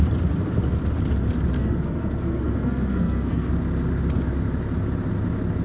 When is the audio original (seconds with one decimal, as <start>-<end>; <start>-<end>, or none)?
0.0-1.5; 3.5-5.6